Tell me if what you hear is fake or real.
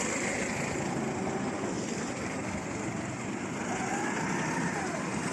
real